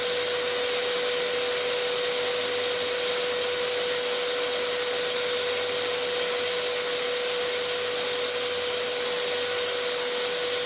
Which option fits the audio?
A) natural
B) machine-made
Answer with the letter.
A